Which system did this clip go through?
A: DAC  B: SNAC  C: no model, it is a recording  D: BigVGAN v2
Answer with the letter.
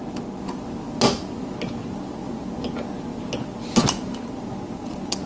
C